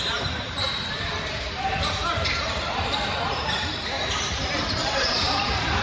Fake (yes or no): yes